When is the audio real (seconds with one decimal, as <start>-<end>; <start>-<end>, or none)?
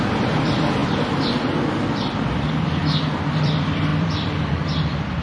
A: 0.8-3.3